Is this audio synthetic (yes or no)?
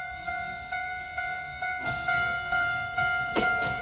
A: yes